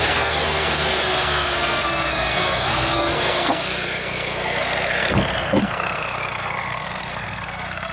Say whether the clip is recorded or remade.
remade